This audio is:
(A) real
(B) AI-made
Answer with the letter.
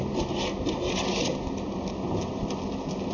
A